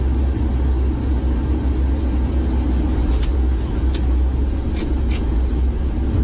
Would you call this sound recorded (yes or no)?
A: yes